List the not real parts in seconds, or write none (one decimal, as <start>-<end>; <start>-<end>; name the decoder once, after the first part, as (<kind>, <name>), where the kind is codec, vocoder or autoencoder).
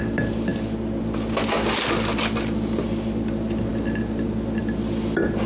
none